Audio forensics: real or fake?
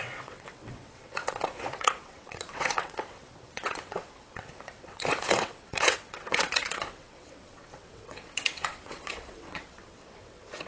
fake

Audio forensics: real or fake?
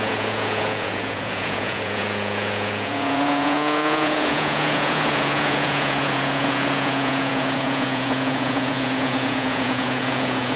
fake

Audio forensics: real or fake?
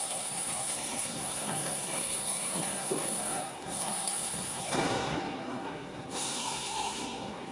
fake